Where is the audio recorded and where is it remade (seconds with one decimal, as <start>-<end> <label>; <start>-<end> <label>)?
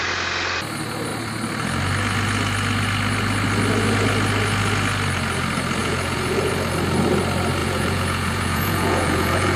0.0-5.8 recorded; 5.8-6.5 remade; 6.5-7.6 recorded; 7.6-9.6 remade